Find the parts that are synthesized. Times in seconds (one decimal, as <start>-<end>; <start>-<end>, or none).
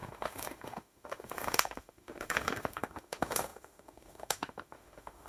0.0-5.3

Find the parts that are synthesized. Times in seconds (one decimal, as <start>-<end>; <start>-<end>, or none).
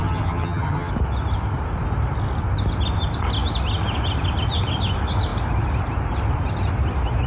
0.0-0.9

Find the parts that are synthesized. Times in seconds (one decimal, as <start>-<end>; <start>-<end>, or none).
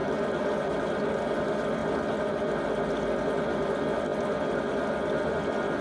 0.0-1.4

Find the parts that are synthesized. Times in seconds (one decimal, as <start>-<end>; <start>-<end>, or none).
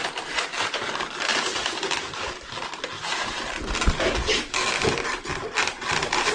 4.3-5.3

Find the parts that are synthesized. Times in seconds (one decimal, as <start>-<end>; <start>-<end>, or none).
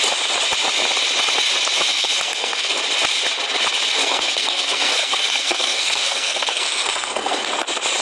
1.9-2.8; 4.0-7.5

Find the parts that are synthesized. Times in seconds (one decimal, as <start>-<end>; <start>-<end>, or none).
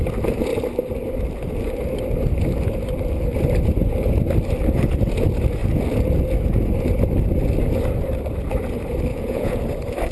9.1-9.6